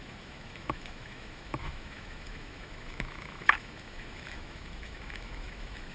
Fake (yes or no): yes